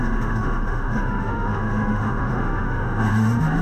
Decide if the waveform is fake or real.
fake